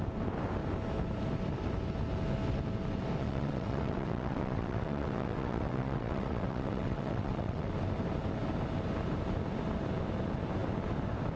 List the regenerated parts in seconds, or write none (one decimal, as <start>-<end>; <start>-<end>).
3.2-7.7